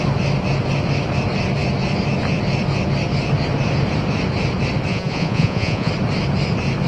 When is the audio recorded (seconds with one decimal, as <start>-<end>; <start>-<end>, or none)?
0.0-4.9; 5.9-6.9